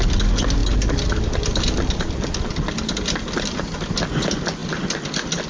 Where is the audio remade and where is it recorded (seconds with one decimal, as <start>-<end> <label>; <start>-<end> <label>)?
0.0-5.5 recorded